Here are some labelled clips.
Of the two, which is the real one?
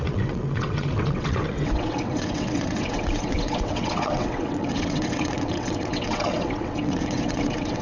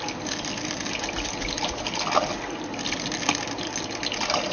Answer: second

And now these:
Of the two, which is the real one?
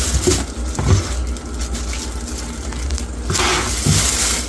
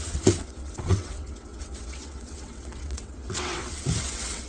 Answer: first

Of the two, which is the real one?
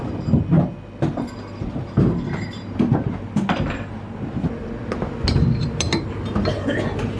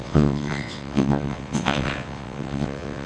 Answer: first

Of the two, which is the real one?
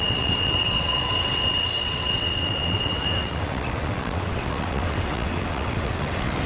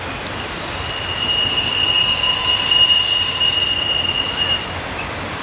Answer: second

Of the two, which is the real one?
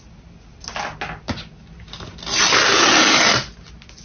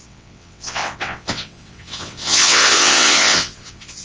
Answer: first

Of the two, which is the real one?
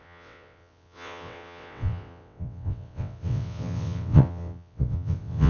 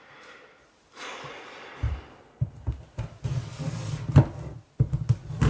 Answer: second